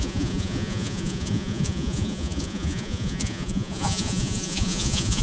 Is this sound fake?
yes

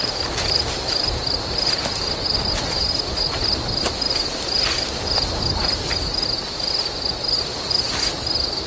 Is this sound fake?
no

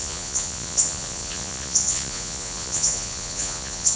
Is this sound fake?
yes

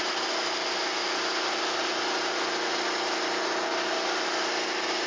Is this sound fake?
no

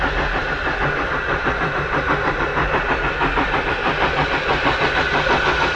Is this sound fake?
no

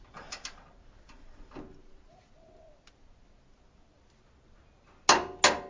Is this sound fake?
no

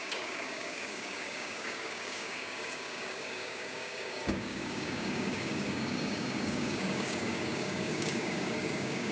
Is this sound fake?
yes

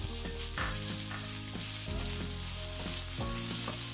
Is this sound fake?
no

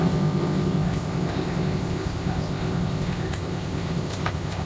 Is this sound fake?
yes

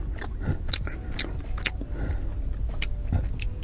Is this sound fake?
no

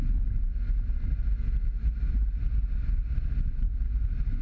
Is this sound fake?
no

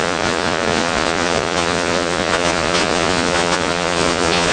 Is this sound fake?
yes